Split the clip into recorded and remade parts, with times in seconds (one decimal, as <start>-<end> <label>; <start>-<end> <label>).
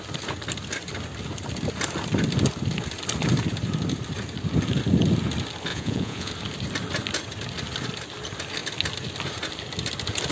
0.0-5.7 recorded; 5.7-6.3 remade; 6.3-10.3 recorded